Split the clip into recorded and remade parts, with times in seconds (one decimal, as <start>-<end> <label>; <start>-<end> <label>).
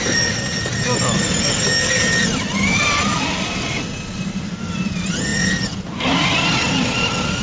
0.0-7.4 recorded